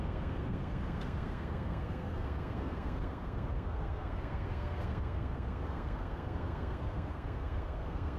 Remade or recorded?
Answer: remade